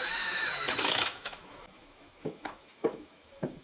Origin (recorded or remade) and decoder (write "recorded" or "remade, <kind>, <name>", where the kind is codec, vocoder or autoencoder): remade, autoencoder, DAC-VAE